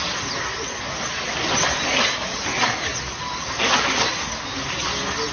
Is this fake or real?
real